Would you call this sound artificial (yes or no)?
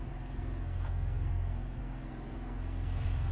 yes